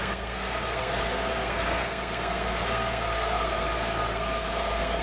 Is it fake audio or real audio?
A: fake